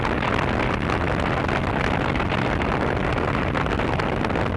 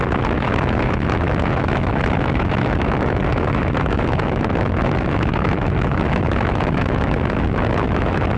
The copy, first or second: second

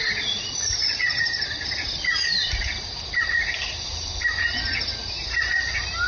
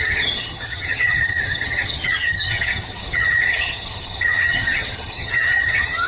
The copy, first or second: second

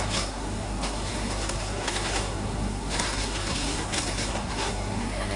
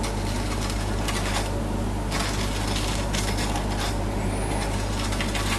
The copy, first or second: first